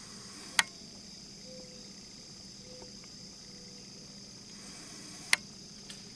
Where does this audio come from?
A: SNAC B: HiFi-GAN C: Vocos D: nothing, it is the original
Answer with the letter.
D